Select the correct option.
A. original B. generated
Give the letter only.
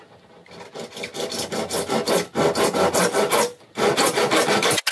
A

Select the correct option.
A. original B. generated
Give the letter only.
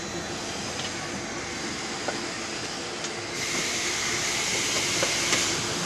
A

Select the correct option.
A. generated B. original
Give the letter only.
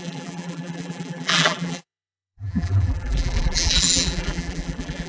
A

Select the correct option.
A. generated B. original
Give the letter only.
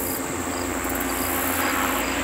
B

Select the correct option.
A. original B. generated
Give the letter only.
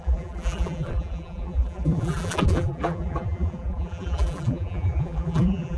B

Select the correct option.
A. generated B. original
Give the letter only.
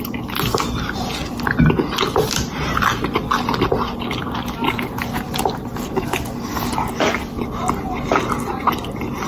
B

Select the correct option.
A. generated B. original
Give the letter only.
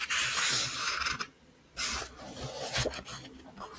B